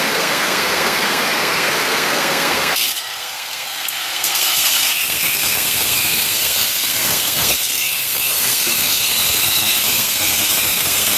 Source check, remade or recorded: remade